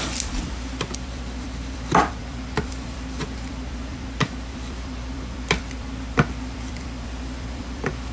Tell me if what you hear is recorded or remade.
remade